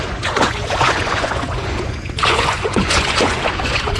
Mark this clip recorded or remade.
remade